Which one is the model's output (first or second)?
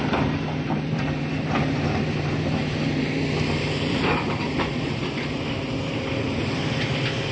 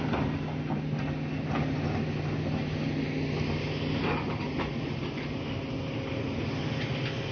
first